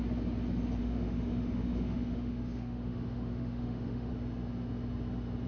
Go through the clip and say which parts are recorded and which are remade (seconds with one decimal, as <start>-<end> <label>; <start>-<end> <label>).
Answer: 0.0-0.8 recorded; 0.8-4.1 remade; 4.1-5.5 recorded